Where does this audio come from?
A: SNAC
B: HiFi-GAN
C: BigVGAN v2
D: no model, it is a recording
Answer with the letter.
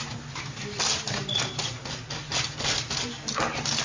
D